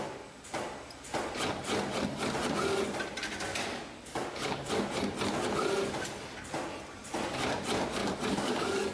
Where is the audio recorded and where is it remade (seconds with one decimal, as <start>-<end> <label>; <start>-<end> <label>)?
0.0-3.5 recorded; 3.5-4.7 remade; 4.7-8.0 recorded; 8.0-8.9 remade